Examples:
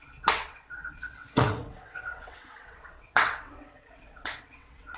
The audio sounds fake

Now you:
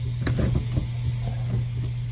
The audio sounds real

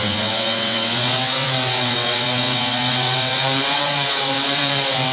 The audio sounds fake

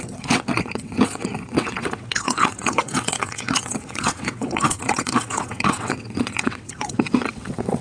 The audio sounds fake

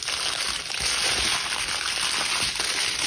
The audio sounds real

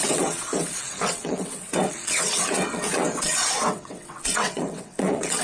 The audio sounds fake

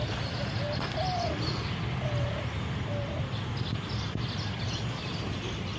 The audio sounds real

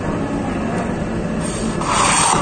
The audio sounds real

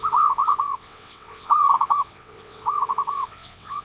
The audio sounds fake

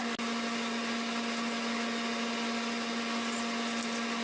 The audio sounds real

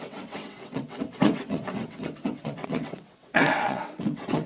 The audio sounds fake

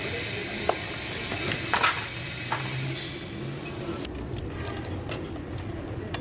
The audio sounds real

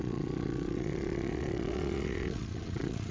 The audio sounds fake